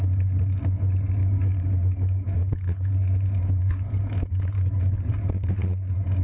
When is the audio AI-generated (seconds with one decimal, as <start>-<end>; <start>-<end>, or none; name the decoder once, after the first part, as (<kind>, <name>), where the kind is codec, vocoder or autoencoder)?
1.2-2.9 (codec, DAC); 3.6-5.1